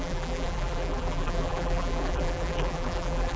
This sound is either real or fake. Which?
fake